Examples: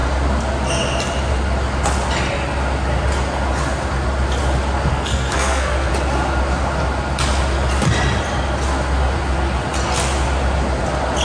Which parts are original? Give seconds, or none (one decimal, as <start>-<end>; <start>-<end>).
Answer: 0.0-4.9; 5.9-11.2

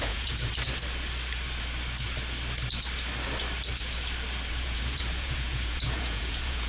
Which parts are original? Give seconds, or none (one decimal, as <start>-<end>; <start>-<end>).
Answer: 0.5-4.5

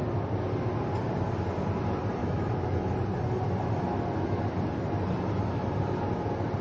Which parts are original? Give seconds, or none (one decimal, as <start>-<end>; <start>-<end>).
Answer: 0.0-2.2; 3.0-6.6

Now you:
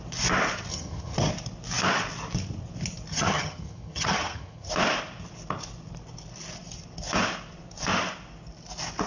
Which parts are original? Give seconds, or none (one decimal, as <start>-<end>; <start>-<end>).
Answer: 0.0-0.7; 1.3-3.1; 4.7-9.1